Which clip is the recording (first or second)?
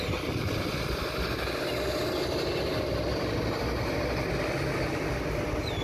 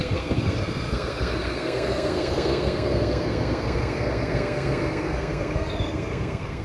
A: first